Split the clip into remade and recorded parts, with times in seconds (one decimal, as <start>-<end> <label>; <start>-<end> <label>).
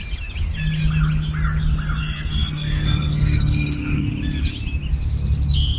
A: 0.0-2.0 recorded; 2.0-4.1 remade; 4.1-5.8 recorded